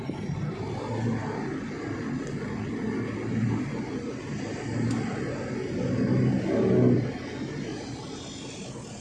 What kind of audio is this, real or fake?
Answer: real